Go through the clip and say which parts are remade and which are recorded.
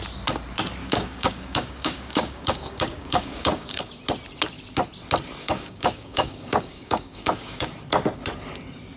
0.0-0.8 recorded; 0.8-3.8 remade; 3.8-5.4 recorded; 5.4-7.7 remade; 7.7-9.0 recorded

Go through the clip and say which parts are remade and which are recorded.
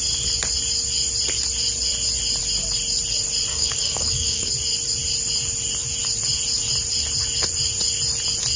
0.0-3.5 recorded; 3.5-4.5 remade; 4.5-8.6 recorded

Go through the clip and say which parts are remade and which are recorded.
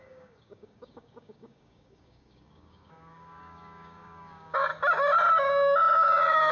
0.0-4.7 remade; 4.7-6.5 recorded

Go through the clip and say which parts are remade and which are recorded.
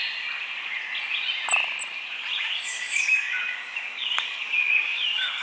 0.0-2.4 recorded; 2.4-5.4 remade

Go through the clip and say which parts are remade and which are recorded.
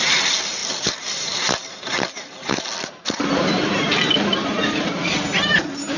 0.0-6.0 recorded